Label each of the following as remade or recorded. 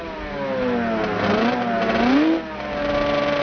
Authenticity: recorded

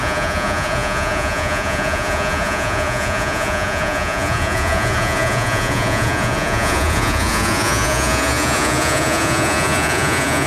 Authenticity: remade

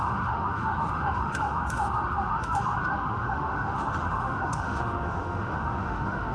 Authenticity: remade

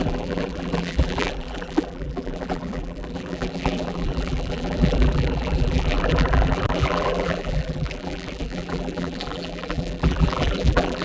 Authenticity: remade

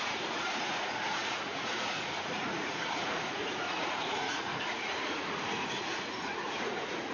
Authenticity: remade